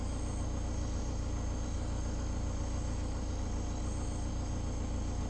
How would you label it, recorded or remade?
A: recorded